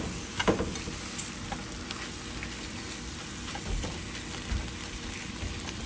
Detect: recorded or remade recorded